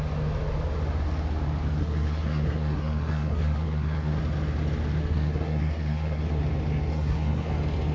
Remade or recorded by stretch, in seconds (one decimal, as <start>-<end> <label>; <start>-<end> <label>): 0.0-1.8 recorded; 1.8-4.2 remade; 4.2-5.0 recorded; 5.0-6.4 remade; 6.4-6.9 recorded; 6.9-7.5 remade; 7.5-7.9 recorded